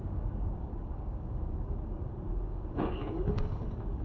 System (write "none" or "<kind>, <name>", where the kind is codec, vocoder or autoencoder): codec, DAC